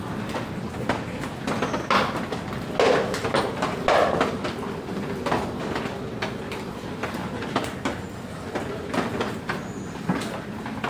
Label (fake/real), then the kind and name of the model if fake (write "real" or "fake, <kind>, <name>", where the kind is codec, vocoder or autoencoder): real